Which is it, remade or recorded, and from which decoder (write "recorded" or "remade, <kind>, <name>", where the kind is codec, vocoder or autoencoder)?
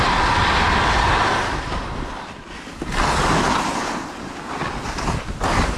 recorded